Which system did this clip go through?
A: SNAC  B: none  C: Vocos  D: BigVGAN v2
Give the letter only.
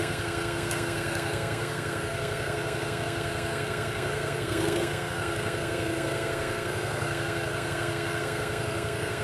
A